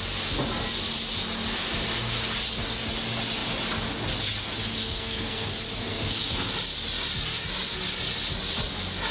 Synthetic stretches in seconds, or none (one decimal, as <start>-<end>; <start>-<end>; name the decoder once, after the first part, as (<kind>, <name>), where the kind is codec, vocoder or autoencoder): 4.8-5.5 (codec, SNAC); 5.9-6.5